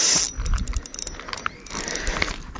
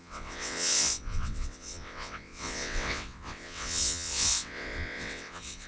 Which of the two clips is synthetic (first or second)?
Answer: second